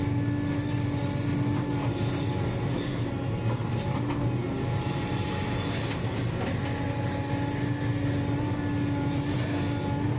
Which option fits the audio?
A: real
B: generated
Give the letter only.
A